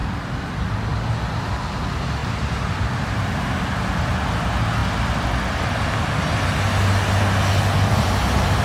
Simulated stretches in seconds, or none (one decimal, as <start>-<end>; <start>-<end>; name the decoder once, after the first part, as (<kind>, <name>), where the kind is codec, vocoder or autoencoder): 2.2-4.1 (vocoder, BigVGAN v2)